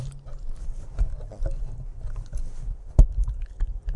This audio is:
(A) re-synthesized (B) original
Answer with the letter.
B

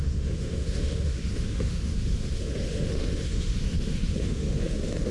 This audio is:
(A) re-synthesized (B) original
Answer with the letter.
A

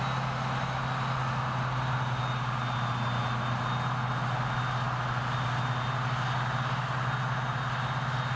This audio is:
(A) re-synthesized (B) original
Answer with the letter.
B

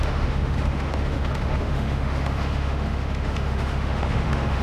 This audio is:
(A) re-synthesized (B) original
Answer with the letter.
A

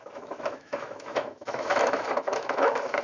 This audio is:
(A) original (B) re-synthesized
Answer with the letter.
B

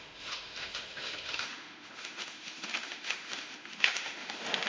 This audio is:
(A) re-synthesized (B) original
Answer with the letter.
A